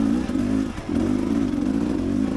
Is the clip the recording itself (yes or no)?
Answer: yes